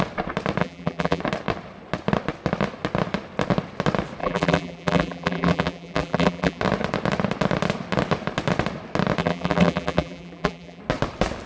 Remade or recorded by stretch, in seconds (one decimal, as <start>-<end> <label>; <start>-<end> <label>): 0.0-0.6 recorded; 0.6-1.2 remade; 1.2-4.2 recorded; 4.2-6.6 remade; 6.6-9.2 recorded; 9.2-10.8 remade; 10.8-11.5 recorded